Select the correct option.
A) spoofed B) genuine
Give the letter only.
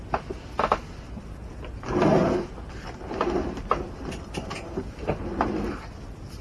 B